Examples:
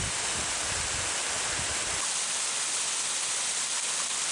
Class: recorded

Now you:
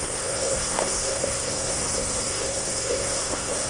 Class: remade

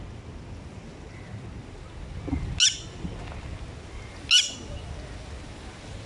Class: recorded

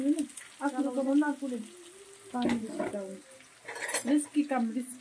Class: recorded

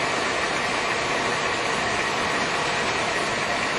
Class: recorded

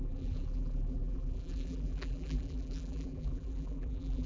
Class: remade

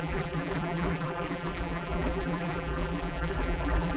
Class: remade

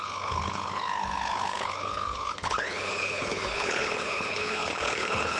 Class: remade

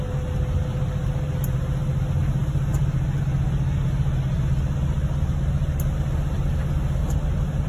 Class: recorded